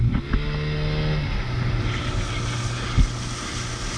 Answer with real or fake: real